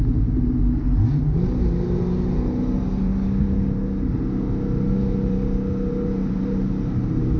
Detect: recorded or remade recorded